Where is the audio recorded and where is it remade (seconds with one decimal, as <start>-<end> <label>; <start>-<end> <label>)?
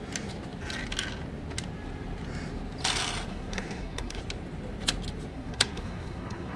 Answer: 0.0-3.3 recorded; 3.3-4.2 remade; 4.2-5.3 recorded; 5.3-6.6 remade